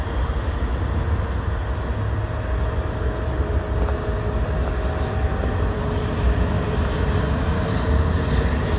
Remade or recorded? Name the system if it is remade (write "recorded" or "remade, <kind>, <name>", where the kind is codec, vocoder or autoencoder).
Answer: recorded